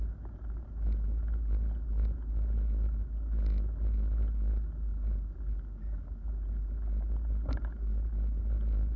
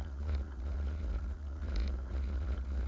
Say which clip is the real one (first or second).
first